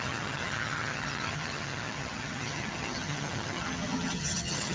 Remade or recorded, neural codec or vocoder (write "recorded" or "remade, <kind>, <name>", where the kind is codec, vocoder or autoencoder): remade, vocoder, HiFi-GAN